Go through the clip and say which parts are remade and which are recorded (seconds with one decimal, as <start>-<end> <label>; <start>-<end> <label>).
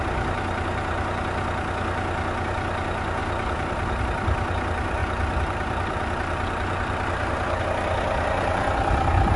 0.0-3.2 recorded; 3.2-4.0 remade; 4.0-5.0 recorded; 5.0-7.6 remade; 7.6-9.4 recorded